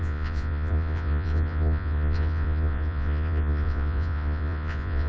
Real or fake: fake